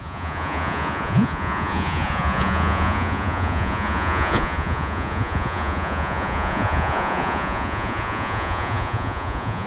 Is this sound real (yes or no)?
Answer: no